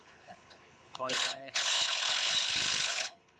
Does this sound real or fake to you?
fake